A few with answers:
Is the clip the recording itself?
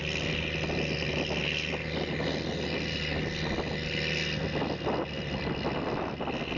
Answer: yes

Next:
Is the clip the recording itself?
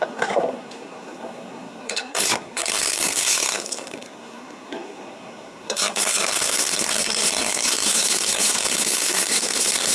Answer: no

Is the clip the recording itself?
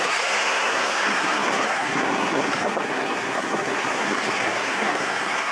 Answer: no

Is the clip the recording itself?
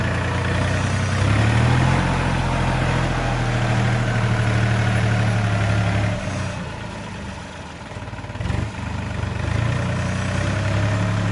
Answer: yes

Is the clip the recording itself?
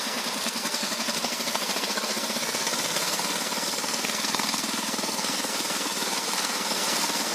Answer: no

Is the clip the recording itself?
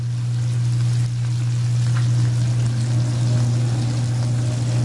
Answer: yes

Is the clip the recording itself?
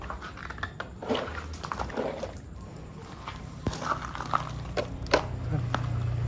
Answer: yes